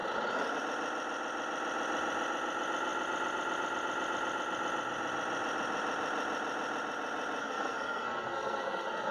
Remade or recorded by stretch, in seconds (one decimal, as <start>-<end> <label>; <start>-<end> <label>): 0.0-7.4 recorded; 7.4-9.1 remade

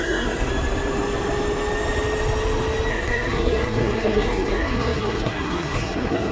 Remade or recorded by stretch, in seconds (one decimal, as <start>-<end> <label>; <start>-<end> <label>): 0.0-0.5 remade; 0.5-2.9 recorded; 2.9-6.3 remade

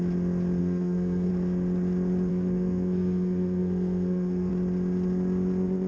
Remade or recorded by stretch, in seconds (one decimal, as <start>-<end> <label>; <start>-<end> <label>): 0.0-0.6 recorded; 0.6-1.3 remade; 1.3-2.3 recorded; 2.3-4.5 remade; 4.5-5.9 recorded

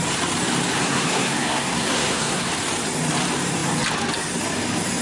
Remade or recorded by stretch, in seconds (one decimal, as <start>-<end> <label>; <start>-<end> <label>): 0.0-0.8 recorded; 0.8-2.5 remade; 2.5-5.0 recorded

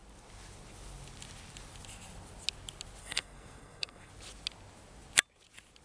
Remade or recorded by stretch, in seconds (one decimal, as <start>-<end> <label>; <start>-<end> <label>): 0.0-3.0 recorded; 3.0-4.1 remade; 4.1-5.8 recorded